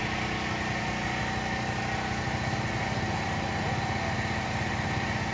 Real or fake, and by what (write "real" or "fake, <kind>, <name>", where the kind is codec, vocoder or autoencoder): real